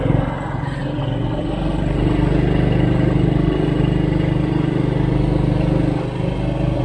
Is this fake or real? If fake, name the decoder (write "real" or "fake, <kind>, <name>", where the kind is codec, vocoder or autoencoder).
real